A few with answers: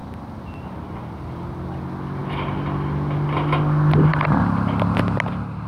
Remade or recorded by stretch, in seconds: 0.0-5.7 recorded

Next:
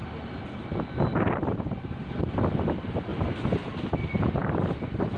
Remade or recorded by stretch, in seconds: 0.0-4.4 recorded; 4.4-5.2 remade

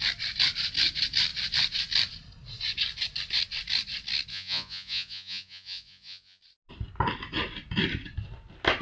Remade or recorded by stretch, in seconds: 0.0-4.3 recorded; 4.3-6.4 remade; 6.4-8.8 recorded